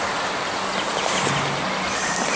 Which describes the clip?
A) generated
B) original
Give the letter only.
B